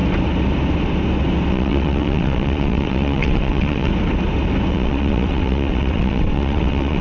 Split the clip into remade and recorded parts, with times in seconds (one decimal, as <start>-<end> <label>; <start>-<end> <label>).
0.0-1.5 recorded; 1.5-3.9 remade; 3.9-4.7 recorded; 4.7-7.0 remade